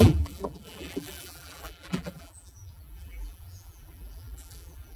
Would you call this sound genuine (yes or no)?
no